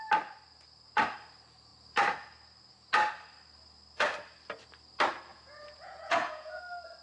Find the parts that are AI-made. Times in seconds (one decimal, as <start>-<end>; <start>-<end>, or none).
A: 5.3-6.6